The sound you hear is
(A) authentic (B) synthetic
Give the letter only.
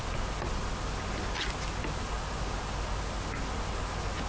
A